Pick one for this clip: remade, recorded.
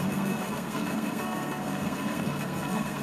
remade